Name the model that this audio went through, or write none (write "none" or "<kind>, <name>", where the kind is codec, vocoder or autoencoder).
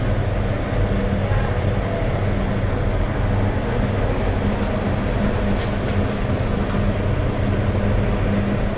none